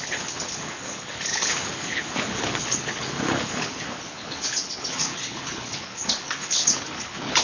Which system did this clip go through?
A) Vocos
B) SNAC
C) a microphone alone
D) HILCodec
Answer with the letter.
D